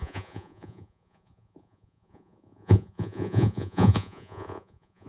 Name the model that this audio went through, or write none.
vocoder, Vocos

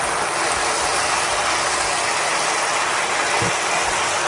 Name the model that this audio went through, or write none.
none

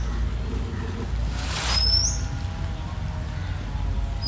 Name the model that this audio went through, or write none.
none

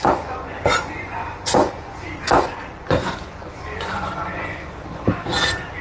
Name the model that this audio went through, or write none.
vocoder, Vocos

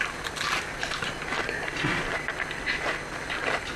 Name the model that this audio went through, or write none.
none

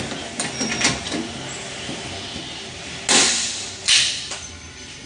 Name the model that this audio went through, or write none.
none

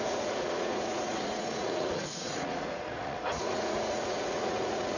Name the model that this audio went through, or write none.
vocoder, Vocos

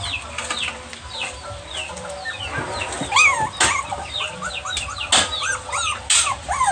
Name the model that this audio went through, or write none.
none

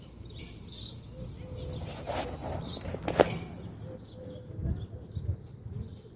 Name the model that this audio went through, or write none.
none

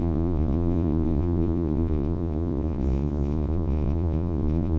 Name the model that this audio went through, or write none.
vocoder, Vocos